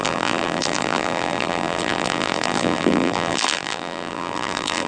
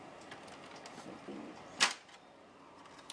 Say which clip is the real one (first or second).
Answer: second